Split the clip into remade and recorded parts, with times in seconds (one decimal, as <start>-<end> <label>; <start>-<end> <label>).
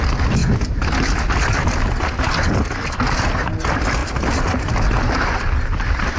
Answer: 0.0-6.2 recorded